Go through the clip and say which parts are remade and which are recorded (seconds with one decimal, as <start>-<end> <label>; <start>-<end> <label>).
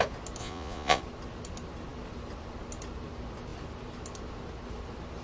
0.0-0.4 recorded; 0.4-1.0 remade; 1.0-5.2 recorded